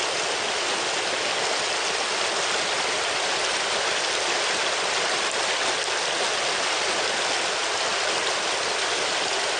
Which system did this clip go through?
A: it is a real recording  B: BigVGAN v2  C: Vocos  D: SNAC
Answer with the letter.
A